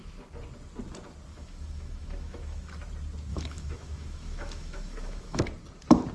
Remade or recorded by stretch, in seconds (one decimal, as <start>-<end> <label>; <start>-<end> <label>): 0.0-1.3 recorded; 1.3-2.7 remade; 2.7-3.3 recorded; 3.3-5.4 remade; 5.4-6.1 recorded